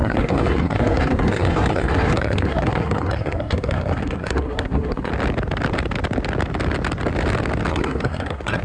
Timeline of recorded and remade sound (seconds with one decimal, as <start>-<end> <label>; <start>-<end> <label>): 0.0-5.1 remade; 5.1-7.7 recorded; 7.7-8.6 remade